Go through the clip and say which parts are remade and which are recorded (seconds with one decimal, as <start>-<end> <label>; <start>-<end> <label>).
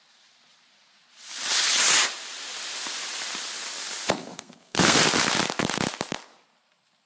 0.0-4.2 recorded; 4.2-5.0 remade; 5.0-7.1 recorded